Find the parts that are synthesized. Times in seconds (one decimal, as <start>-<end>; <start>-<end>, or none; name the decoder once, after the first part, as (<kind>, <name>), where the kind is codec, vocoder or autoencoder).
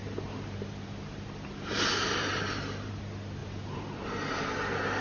0.0-3.0 (vocoder, BigVGAN v2); 3.4-4.0